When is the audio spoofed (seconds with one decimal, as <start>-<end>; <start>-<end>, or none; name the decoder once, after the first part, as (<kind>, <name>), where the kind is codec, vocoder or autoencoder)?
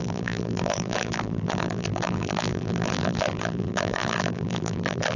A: 0.0-5.2 (vocoder, BigVGAN v2)